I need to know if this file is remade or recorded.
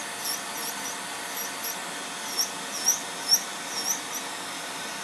recorded